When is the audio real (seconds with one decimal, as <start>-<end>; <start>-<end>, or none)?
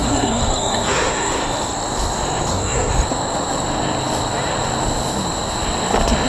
1.4-2.5; 2.9-6.3